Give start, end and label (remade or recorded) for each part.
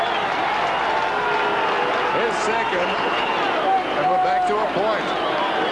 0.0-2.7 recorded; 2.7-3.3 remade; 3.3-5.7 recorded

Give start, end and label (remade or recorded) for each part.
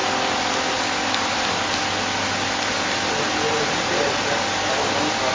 0.0-5.3 recorded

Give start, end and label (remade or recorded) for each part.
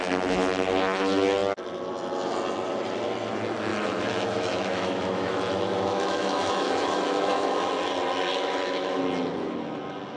0.0-3.7 recorded; 3.7-7.7 remade; 7.7-8.3 recorded; 8.3-9.0 remade; 9.0-10.2 recorded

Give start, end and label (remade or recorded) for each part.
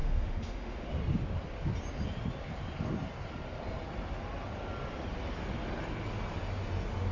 0.0-0.9 remade; 0.9-7.1 recorded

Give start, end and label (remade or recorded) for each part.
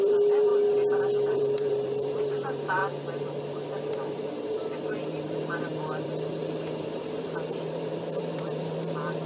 0.0-0.5 remade; 0.5-1.3 recorded; 1.3-2.8 remade; 2.8-3.9 recorded; 3.9-9.3 remade